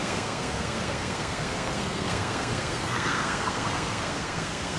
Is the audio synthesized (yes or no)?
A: yes